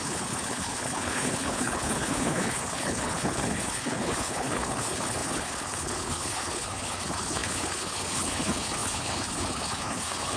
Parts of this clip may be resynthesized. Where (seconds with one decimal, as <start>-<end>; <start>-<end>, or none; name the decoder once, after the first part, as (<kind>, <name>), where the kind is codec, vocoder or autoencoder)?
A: 0.0-10.4 (codec, HILCodec)